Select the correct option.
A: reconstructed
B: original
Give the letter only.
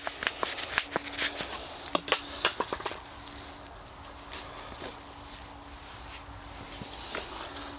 B